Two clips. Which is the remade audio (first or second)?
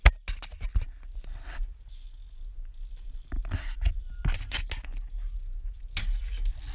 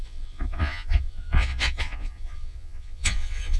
second